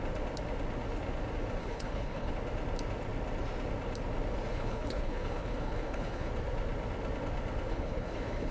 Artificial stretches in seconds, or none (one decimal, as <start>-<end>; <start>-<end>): 1.6-2.3; 4.5-6.3; 7.7-8.5